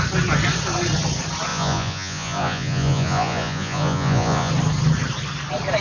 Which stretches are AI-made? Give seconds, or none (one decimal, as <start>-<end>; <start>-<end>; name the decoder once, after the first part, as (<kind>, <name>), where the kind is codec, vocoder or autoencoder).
1.5-4.5 (vocoder, Vocos)